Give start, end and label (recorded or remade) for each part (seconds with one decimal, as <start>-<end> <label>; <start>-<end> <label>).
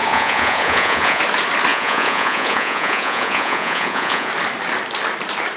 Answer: 0.0-1.2 remade; 1.2-1.7 recorded; 1.7-4.3 remade; 4.3-5.6 recorded